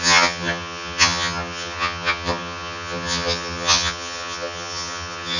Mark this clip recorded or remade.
remade